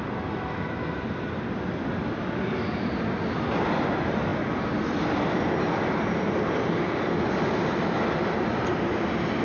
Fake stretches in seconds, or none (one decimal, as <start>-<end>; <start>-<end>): none